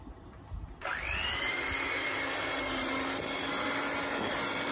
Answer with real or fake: real